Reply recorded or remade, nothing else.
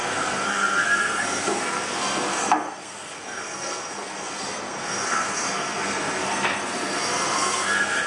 remade